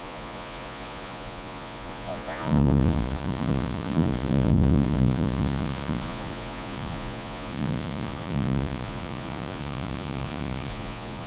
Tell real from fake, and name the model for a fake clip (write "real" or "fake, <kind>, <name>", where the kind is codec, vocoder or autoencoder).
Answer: fake, vocoder, Vocos